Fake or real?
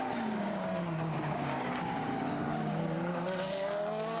fake